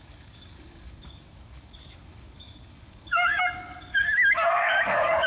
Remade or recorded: remade